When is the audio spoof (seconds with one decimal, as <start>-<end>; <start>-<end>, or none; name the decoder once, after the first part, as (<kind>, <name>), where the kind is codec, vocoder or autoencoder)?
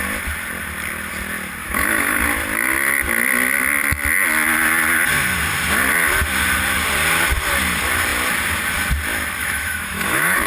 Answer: 1.6-2.2 (autoencoder, DAC-VAE); 9.4-10.5